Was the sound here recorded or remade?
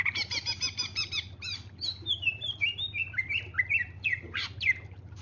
remade